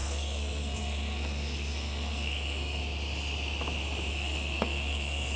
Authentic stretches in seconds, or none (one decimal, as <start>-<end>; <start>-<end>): 2.8-4.1